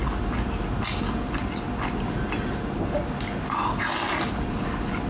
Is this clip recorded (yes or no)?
yes